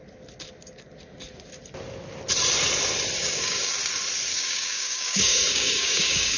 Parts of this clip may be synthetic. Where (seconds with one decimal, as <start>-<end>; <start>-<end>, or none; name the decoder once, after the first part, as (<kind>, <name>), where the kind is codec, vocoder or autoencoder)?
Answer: 3.2-3.7 (codec, DAC); 4.3-6.4

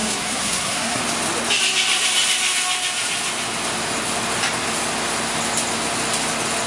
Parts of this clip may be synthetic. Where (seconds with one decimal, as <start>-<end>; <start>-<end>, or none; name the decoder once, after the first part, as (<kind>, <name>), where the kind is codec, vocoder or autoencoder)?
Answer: 0.0-1.0 (codec, SNAC)

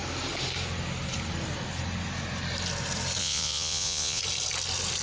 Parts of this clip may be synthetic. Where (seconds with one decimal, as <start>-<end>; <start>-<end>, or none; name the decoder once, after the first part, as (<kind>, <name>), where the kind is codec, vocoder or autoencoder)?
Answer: 3.2-4.2 (vocoder, Vocos)

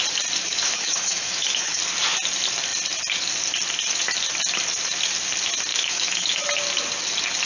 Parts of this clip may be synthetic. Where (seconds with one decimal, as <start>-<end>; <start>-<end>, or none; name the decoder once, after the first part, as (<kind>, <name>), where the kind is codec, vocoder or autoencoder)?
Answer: 0.4-1.8 (autoencoder, DAC-VAE); 5.7-6.5

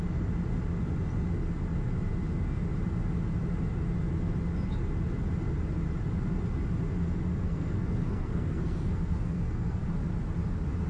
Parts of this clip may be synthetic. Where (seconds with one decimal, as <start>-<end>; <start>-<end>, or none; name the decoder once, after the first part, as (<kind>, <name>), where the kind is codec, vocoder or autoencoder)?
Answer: 7.3-9.8 (codec, SNAC)

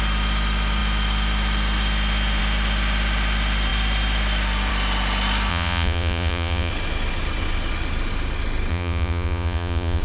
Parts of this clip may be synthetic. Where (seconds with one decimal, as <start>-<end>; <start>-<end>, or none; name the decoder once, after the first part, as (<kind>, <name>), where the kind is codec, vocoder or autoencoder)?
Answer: 5.5-6.7 (vocoder, Vocos); 8.7-10.0

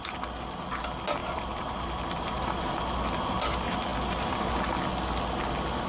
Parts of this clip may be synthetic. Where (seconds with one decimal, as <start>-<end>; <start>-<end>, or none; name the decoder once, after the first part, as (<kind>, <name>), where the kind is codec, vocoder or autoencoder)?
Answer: 1.2-1.7 (vocoder, BigVGAN v2)

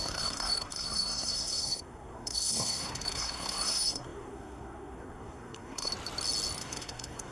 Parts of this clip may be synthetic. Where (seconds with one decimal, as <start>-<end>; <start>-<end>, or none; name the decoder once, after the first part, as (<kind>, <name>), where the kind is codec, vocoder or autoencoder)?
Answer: 0.0-5.9 (codec, SNAC); 6.6-7.3